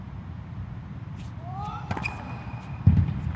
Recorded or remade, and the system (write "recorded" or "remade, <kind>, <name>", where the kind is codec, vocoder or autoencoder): remade, vocoder, BigVGAN v2